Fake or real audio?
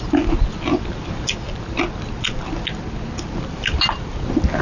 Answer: real